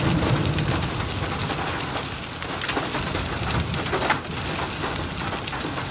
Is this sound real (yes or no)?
yes